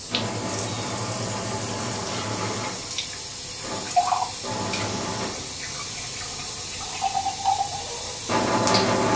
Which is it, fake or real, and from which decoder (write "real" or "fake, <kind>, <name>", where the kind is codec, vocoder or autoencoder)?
real